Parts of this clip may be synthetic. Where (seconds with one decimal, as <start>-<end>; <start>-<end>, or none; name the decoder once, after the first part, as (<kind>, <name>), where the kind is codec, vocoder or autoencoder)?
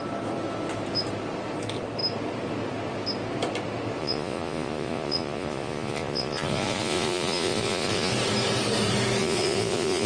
4.0-8.1 (vocoder, Vocos); 9.2-10.1